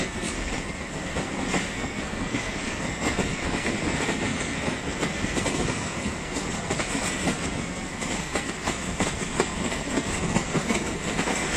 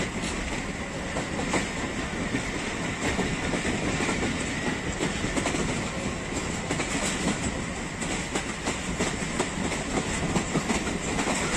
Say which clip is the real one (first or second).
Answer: second